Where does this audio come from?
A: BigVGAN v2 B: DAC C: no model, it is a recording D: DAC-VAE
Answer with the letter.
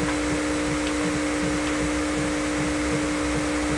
C